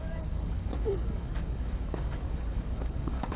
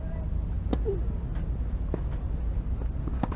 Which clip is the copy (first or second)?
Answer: first